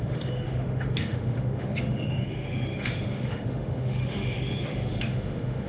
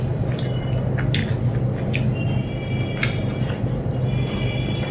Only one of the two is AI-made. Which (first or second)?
first